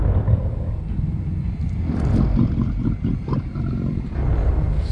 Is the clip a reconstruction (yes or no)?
yes